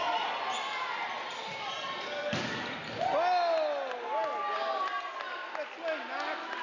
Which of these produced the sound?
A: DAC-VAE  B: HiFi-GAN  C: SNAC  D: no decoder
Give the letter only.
D